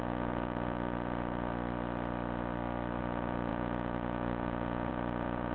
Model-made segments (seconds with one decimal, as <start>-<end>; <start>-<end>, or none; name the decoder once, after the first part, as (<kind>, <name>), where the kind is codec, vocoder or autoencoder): 0.0-1.5 (vocoder, Vocos); 3.0-5.5